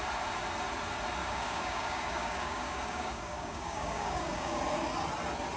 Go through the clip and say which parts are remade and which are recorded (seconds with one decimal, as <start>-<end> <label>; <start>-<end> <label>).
0.0-1.2 recorded; 1.2-4.6 remade; 4.6-5.6 recorded

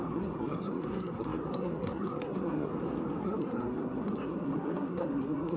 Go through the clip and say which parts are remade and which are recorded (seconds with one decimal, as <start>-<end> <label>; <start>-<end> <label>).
0.0-2.7 remade; 2.7-3.2 recorded; 3.2-5.6 remade

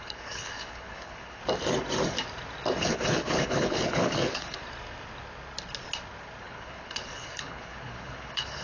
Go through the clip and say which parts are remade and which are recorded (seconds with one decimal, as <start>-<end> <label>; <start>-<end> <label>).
0.0-1.4 remade; 1.4-2.8 recorded; 2.8-4.6 remade; 4.6-6.4 recorded; 6.4-8.6 remade